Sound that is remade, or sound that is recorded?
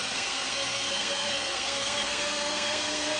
remade